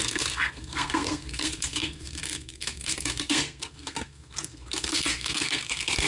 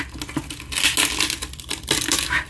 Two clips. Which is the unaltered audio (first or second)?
second